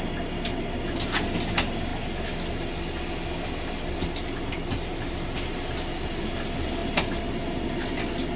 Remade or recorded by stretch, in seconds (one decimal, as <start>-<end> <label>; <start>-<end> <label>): 0.0-8.4 recorded